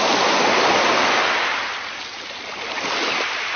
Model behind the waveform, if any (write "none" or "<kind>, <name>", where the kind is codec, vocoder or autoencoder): none